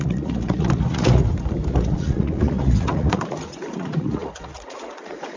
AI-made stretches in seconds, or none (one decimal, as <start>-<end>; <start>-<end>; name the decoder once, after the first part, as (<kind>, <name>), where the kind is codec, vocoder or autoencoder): 0.0-1.2 (vocoder, Vocos); 1.7-5.4